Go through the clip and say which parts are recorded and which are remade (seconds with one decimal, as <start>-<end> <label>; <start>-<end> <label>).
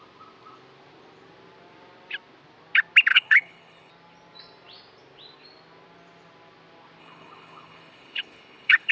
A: 0.0-3.1 recorded; 3.1-3.9 remade; 3.9-7.0 recorded; 7.0-8.9 remade